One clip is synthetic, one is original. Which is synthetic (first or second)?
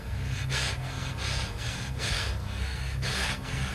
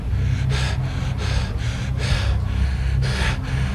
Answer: first